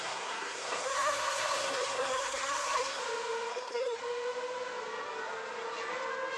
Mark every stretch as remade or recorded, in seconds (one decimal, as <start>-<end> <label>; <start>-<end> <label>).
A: 0.0-3.0 remade; 3.0-3.5 recorded; 3.5-4.0 remade; 4.0-6.4 recorded